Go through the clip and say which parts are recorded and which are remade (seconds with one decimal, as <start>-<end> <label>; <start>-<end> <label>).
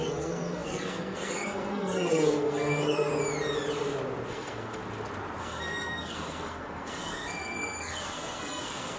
0.0-3.1 remade; 3.1-4.3 recorded; 4.3-4.8 remade; 4.8-5.4 recorded; 5.4-9.0 remade